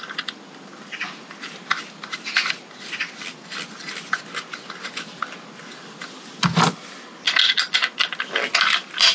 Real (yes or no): yes